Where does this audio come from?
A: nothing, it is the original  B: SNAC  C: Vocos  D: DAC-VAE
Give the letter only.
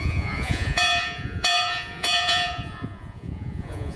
C